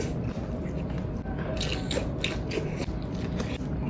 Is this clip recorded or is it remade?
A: recorded